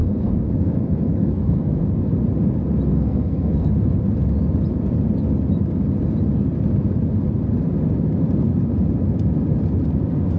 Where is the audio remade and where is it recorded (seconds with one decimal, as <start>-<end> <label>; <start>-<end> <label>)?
0.0-1.8 remade; 1.8-2.9 recorded; 2.9-3.7 remade; 3.7-10.4 recorded